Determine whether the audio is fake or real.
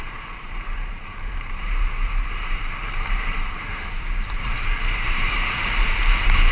fake